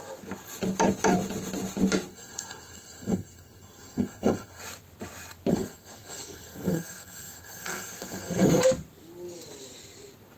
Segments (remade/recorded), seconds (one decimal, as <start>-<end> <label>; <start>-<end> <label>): 0.0-2.1 recorded; 2.1-4.6 remade; 4.6-5.5 recorded; 5.5-8.6 remade; 8.6-10.4 recorded